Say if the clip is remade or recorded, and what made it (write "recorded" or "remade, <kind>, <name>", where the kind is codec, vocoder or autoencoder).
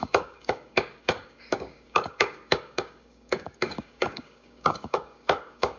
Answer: remade, codec, DAC